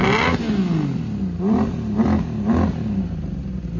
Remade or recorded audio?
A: recorded